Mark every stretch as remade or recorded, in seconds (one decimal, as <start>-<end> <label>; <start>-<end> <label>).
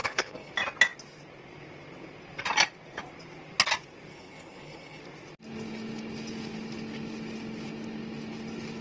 0.0-0.5 remade; 0.5-4.1 recorded; 4.1-5.0 remade; 5.0-8.8 recorded